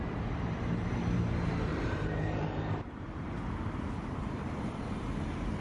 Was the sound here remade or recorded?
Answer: remade